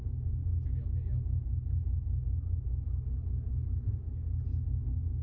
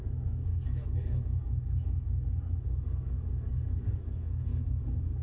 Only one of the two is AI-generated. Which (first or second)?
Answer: second